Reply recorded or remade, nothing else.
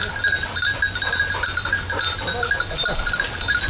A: recorded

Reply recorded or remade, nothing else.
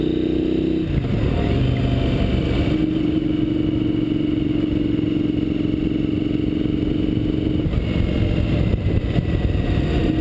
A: recorded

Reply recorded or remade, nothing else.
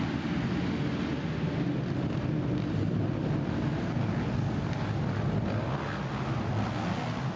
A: recorded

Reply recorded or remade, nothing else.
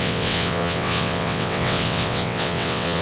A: remade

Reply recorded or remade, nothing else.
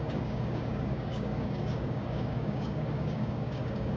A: remade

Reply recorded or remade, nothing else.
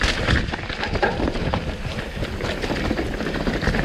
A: recorded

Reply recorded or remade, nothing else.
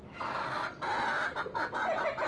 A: recorded